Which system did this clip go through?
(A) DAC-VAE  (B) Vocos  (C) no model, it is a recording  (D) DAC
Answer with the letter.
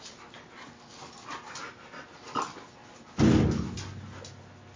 C